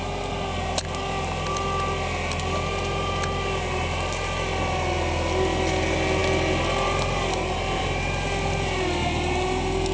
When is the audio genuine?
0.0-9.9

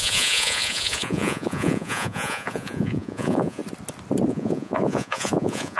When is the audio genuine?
3.6-4.3

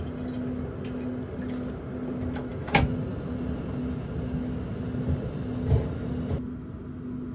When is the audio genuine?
0.0-7.3

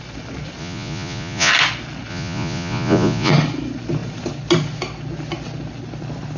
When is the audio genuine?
0.0-0.6; 1.5-2.1; 3.3-6.4

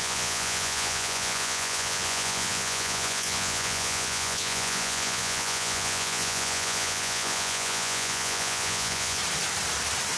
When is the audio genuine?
9.2-10.2

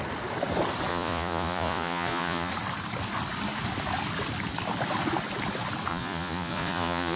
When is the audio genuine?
0.0-0.9; 2.5-5.9